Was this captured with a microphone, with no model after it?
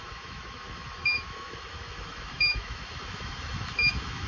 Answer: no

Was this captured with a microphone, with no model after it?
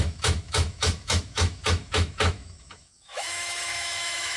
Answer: no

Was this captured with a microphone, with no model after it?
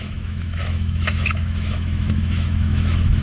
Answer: no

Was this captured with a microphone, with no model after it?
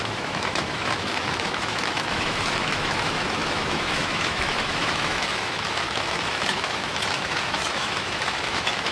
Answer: no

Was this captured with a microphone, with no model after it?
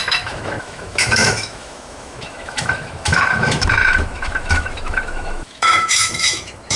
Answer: no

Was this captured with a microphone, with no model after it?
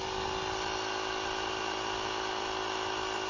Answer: yes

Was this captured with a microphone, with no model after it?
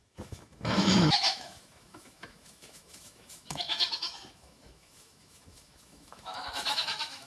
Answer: no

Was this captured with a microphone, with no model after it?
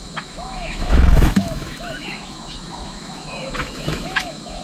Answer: no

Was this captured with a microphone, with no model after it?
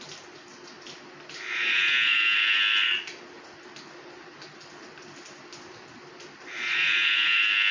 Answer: yes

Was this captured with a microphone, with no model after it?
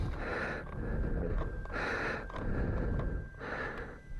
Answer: yes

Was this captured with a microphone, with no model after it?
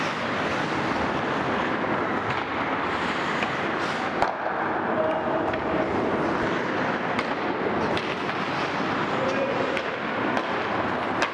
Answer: yes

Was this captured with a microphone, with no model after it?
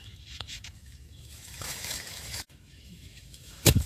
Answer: no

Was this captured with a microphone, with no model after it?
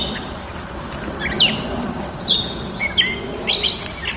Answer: yes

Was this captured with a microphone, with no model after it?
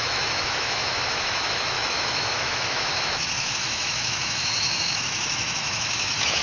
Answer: no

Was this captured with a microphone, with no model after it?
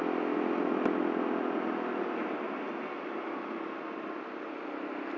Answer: yes